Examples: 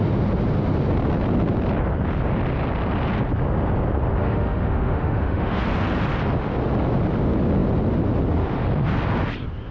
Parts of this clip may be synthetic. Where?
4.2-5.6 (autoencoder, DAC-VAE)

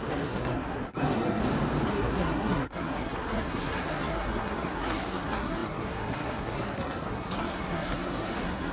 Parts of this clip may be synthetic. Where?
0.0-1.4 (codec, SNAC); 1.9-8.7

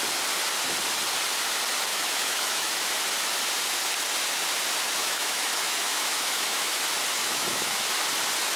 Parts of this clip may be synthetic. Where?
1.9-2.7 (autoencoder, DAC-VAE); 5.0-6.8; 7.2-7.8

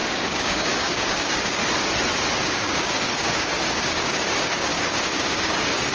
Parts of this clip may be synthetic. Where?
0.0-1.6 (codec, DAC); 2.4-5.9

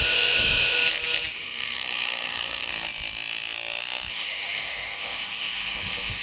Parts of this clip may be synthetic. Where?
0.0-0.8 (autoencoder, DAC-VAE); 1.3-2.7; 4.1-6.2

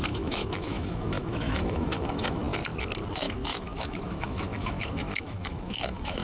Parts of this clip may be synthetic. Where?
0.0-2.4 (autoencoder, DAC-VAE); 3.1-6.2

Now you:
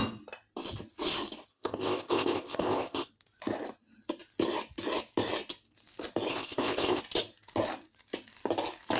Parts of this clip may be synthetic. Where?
1.5-3.1 (codec, ZipCodec); 6.3-7.0

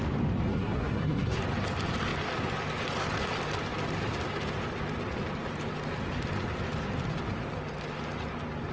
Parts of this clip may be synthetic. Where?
0.5-1.4 (codec, SNAC)